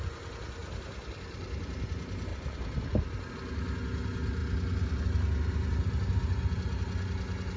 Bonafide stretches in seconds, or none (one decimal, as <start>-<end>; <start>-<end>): 0.0-0.6; 1.8-2.3; 3.3-7.6